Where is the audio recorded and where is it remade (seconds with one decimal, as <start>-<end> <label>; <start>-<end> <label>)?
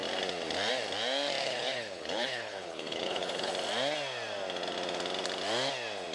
0.0-1.4 recorded; 1.4-3.5 remade; 3.5-6.1 recorded